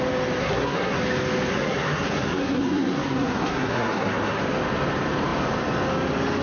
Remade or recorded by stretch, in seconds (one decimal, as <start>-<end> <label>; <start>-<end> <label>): 0.0-0.4 recorded; 0.4-1.0 remade; 1.0-1.5 recorded; 1.5-4.4 remade; 4.4-6.4 recorded